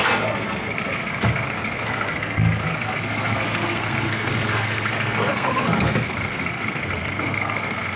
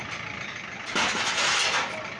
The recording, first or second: second